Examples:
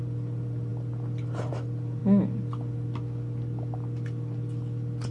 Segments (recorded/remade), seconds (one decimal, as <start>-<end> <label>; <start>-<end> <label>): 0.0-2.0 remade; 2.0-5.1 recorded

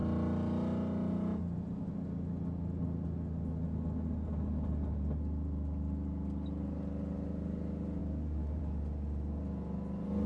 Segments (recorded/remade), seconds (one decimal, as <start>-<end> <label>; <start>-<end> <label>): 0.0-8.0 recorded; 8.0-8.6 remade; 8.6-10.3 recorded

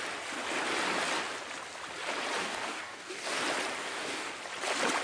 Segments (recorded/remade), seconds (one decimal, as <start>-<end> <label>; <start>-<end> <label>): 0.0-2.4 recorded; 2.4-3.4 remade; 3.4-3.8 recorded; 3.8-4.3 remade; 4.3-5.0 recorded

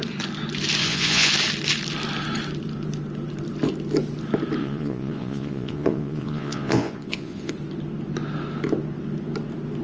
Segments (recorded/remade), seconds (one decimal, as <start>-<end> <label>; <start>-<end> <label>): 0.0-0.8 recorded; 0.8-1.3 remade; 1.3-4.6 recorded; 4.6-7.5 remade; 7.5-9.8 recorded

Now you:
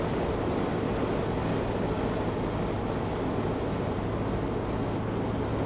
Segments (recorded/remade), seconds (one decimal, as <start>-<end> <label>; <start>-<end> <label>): 0.0-5.7 recorded

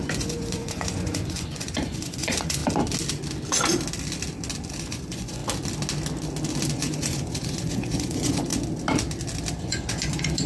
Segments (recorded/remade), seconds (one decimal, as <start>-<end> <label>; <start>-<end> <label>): 0.0-2.6 remade; 2.6-4.8 recorded; 4.8-5.4 remade; 5.4-6.7 recorded; 6.7-8.5 remade; 8.5-9.6 recorded; 9.6-10.5 remade

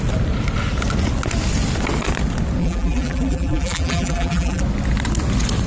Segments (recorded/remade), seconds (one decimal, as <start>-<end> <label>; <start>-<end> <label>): 0.0-2.6 recorded; 2.6-4.6 remade; 4.6-5.7 recorded